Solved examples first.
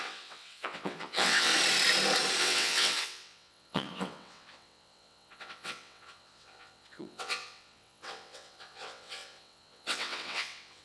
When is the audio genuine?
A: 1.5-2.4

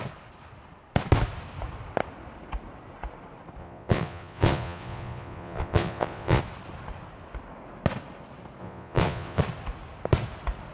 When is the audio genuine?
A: 0.0-3.6; 6.4-8.6; 9.4-10.7